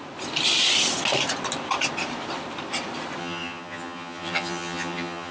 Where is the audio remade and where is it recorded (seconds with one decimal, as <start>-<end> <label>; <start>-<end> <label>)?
0.0-3.2 recorded; 3.2-5.3 remade